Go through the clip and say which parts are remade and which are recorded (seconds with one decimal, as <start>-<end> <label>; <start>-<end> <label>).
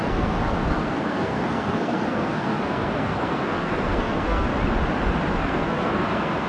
0.0-4.5 remade; 4.5-5.3 recorded; 5.3-6.5 remade